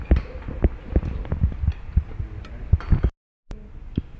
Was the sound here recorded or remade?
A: recorded